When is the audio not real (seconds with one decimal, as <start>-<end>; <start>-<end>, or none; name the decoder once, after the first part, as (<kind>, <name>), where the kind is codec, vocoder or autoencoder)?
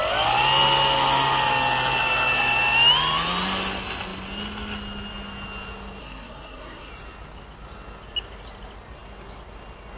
6.0-6.9 (codec, SNAC)